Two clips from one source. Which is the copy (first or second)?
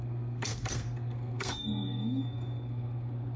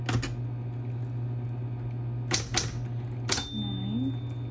first